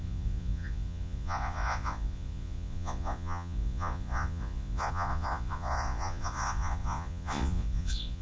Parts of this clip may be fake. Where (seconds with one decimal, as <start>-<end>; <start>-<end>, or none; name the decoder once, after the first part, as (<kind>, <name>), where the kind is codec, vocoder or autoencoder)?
0.0-8.2 (vocoder, Vocos)